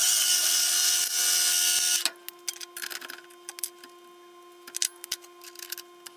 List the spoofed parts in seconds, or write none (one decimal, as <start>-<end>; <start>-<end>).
0.4-1.2